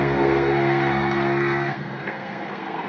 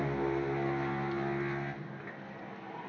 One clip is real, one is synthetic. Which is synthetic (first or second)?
first